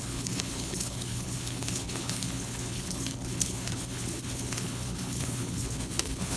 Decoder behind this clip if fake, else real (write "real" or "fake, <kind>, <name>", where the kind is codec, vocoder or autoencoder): fake, codec, HILCodec